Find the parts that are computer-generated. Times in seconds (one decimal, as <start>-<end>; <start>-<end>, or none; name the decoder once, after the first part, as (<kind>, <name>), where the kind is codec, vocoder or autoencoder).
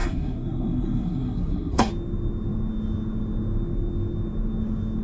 0.0-1.9 (codec, SNAC)